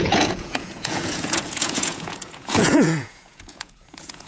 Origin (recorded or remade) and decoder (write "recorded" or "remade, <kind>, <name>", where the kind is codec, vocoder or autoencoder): remade, vocoder, Vocos